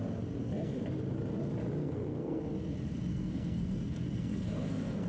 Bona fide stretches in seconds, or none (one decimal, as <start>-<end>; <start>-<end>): 0.0-0.4; 0.9-1.8; 2.4-3.1

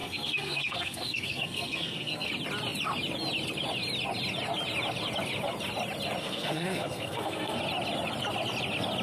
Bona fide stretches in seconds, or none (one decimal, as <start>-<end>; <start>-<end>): 2.3-6.2; 7.6-9.0

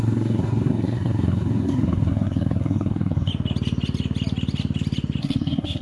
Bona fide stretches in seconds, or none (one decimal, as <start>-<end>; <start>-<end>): 3.3-5.2

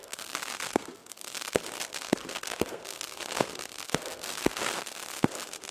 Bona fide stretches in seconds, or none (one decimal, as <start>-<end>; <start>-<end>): none

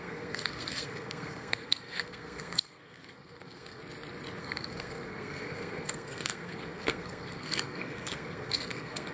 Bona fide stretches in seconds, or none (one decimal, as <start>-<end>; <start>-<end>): 3.8-4.4